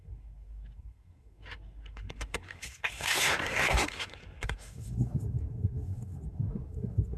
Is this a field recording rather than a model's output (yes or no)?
no